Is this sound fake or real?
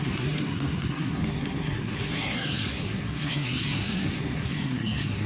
fake